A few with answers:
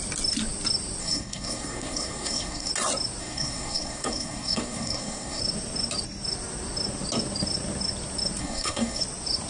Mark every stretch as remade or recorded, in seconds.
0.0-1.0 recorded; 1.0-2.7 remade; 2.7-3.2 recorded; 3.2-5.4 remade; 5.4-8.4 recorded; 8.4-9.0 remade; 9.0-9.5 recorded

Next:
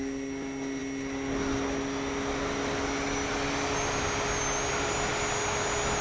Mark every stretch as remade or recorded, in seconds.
0.0-6.0 recorded